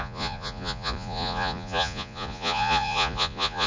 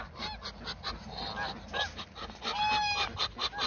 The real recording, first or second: second